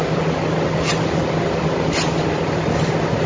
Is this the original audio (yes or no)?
yes